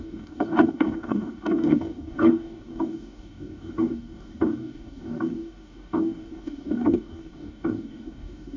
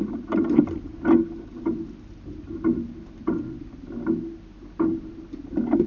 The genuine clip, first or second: second